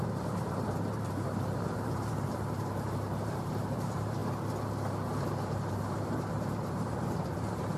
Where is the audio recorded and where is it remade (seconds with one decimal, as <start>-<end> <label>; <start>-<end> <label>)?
0.0-4.2 remade; 4.2-5.2 recorded; 5.2-7.8 remade